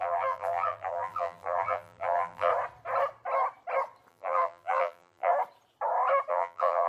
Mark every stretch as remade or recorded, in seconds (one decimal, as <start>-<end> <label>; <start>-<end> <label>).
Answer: 0.0-2.5 remade; 2.5-4.1 recorded; 4.1-5.3 remade; 5.3-6.3 recorded; 6.3-6.9 remade